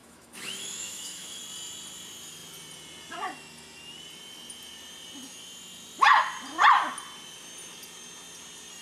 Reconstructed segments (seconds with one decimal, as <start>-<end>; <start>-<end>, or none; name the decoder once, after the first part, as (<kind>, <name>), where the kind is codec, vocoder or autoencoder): 0.0-1.4 (autoencoder, DAC-VAE)